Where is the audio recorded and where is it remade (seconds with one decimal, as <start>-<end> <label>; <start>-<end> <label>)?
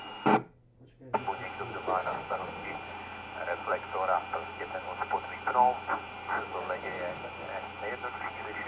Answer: 0.0-2.0 recorded; 2.0-2.5 remade; 2.5-8.7 recorded